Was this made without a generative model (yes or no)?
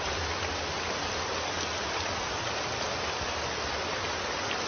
yes